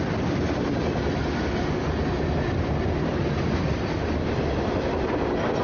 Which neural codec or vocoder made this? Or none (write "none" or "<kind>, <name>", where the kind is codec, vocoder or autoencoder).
none